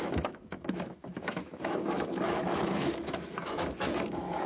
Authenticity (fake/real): fake